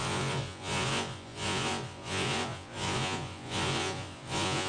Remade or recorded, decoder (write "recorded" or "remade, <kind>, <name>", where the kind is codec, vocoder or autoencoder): remade, vocoder, Vocos